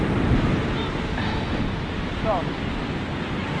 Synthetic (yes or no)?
no